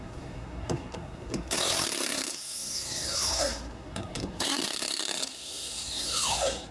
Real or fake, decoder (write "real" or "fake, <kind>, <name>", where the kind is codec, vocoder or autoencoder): fake, codec, SNAC